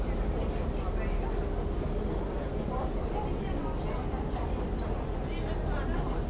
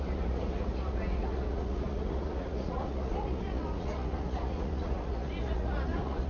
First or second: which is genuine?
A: first